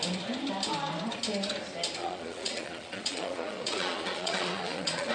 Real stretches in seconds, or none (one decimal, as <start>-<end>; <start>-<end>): 0.0-2.0